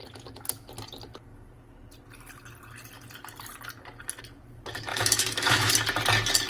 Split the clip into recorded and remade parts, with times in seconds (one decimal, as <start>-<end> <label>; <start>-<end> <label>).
0.0-4.9 recorded; 4.9-5.7 remade; 5.7-6.5 recorded